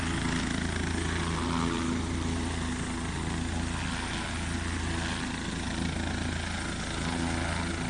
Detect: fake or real real